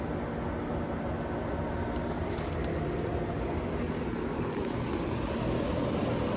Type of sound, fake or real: real